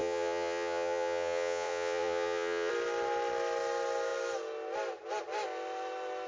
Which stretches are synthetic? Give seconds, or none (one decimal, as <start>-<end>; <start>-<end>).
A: 0.0-2.7